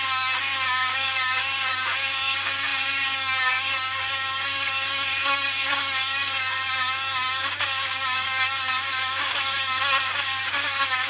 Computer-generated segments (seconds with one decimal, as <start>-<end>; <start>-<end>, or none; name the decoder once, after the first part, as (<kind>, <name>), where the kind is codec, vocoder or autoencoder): 0.0-11.1 (codec, DAC)